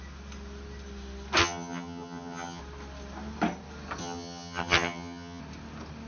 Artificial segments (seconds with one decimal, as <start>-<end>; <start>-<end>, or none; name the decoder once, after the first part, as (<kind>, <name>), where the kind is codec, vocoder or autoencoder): 1.4-2.6 (vocoder, HiFi-GAN); 4.0-5.4